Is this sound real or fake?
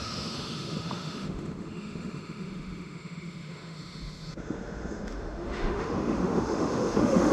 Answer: fake